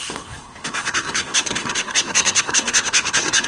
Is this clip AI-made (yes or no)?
yes